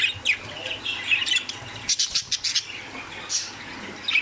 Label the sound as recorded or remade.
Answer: recorded